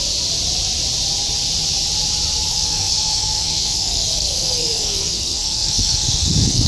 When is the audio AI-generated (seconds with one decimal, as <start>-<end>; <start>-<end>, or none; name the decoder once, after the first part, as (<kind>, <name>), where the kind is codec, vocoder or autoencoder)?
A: 2.5-6.7 (codec, SNAC)